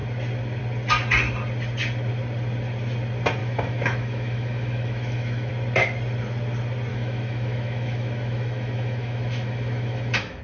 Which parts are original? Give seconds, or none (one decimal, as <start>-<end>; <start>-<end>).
0.0-3.4; 5.5-6.9